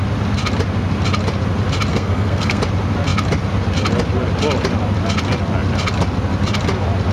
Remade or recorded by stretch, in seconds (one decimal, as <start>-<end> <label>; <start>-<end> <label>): 0.0-1.9 recorded; 1.9-2.6 remade; 2.6-7.1 recorded